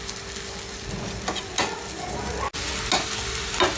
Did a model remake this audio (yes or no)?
no